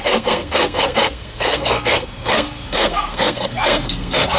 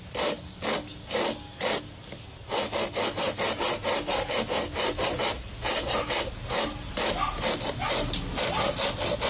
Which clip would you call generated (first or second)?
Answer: first